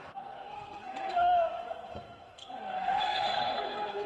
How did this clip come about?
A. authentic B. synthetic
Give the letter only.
B